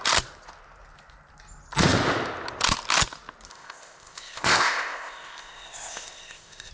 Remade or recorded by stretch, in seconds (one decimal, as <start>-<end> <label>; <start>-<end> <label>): 0.0-3.5 recorded; 3.5-6.7 remade